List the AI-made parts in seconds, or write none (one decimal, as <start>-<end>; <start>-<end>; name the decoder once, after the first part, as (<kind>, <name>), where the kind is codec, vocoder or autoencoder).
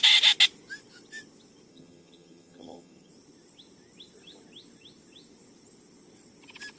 1.7-3.1 (vocoder, HiFi-GAN)